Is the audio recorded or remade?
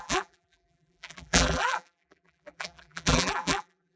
remade